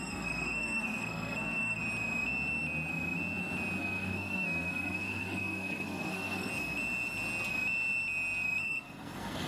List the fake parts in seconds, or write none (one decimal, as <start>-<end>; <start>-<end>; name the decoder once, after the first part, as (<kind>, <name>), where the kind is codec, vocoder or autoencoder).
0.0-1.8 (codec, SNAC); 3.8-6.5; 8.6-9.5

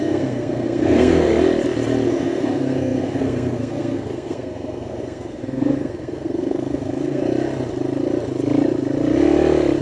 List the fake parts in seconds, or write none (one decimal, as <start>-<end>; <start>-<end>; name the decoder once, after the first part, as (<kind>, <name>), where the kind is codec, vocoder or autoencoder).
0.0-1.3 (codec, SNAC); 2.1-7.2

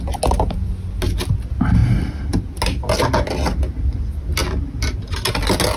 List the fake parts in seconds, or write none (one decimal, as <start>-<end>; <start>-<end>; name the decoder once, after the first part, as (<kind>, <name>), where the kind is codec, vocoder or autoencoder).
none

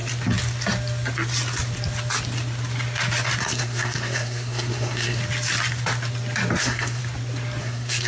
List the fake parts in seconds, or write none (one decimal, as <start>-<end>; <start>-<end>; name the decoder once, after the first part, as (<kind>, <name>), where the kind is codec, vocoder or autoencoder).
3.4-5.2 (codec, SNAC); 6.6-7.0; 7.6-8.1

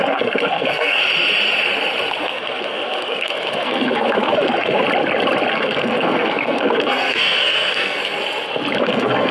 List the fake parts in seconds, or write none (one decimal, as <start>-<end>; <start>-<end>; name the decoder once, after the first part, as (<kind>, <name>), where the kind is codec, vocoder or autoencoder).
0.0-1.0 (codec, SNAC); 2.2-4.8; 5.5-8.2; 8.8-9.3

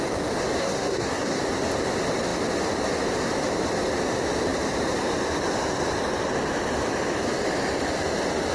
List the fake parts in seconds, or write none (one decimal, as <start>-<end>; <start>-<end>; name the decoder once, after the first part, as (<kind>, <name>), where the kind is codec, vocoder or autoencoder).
0.6-1.4 (codec, SNAC)

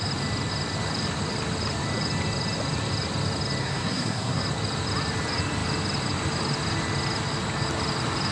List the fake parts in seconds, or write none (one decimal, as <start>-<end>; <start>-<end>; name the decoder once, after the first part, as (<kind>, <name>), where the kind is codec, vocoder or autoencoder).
3.6-4.4 (codec, SNAC)